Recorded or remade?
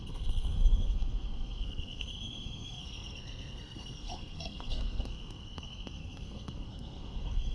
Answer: remade